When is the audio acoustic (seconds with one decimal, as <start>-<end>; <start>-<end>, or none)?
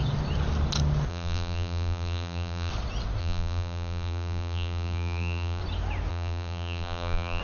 0.0-1.1; 2.7-3.2; 5.6-6.1